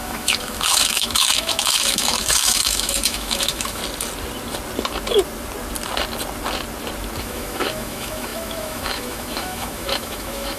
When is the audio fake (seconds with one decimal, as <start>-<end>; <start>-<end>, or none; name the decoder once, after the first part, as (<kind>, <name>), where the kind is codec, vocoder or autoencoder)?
0.0-3.8 (autoencoder, DAC-VAE); 7.2-10.6